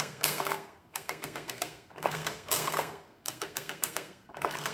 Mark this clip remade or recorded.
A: remade